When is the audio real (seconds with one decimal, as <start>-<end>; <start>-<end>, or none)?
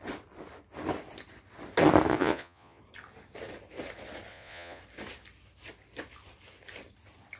0.0-2.1; 2.8-4.3; 4.8-7.4